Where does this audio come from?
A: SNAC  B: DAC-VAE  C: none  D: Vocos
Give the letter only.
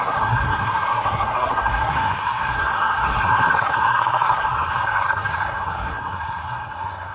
A